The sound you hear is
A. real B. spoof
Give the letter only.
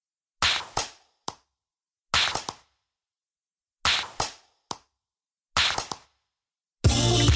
A